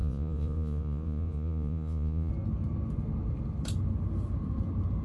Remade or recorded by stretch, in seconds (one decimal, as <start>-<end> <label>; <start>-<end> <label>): 0.0-2.3 remade; 2.3-5.0 recorded